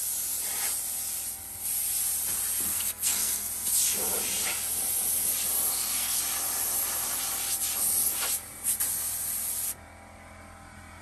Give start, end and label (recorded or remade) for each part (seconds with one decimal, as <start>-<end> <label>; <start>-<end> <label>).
0.0-2.7 recorded; 2.7-3.5 remade; 3.5-5.7 recorded; 5.7-6.2 remade; 6.2-11.0 recorded